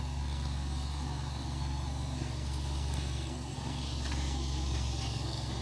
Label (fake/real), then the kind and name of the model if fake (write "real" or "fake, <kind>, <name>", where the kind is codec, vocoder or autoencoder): fake, codec, SNAC